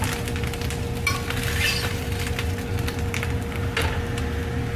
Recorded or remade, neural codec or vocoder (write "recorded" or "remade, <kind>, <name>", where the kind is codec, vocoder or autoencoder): recorded